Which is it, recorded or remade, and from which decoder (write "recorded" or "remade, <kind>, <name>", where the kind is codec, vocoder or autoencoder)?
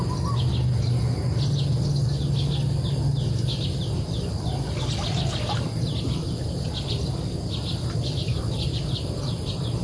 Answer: recorded